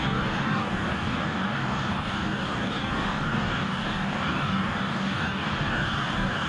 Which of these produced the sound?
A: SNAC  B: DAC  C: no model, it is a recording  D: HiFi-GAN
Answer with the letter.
B